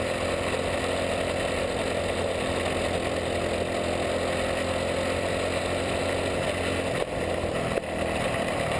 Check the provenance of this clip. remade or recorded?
recorded